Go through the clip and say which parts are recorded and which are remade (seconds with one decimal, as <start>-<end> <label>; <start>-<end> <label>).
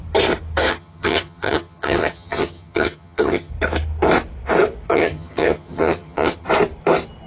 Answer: 0.0-0.7 recorded; 0.7-3.5 remade; 3.5-4.9 recorded; 4.9-6.5 remade; 6.5-7.3 recorded